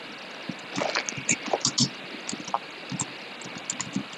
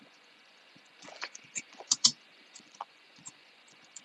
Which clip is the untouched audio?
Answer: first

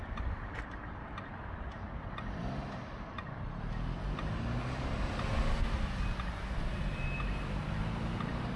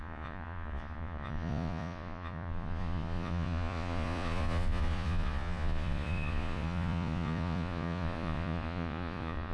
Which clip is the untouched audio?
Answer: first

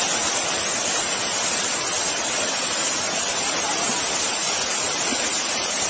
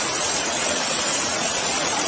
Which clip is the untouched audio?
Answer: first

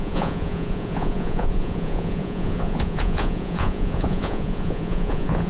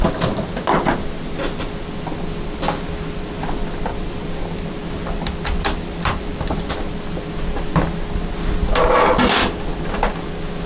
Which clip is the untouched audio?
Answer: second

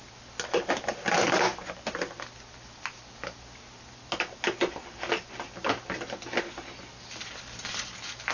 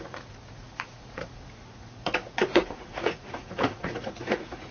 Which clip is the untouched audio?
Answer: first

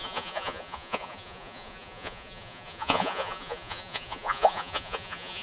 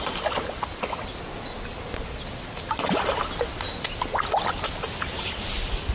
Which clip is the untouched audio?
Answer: second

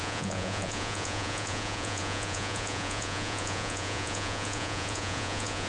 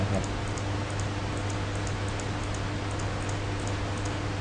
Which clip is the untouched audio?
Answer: second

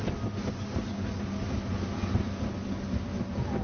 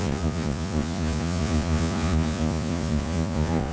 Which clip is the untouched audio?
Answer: first